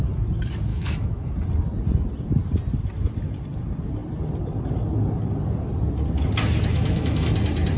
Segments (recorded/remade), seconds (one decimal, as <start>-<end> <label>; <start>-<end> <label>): 0.0-0.7 recorded; 0.7-1.3 remade; 1.3-6.7 recorded; 6.7-7.3 remade; 7.3-7.8 recorded